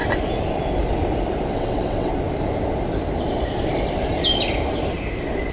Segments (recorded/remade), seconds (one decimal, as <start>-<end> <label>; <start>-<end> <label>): 0.0-1.5 recorded; 1.5-2.1 remade; 2.1-5.5 recorded